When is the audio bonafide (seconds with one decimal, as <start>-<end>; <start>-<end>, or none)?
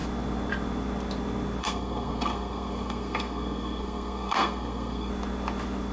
0.0-1.6; 5.1-5.9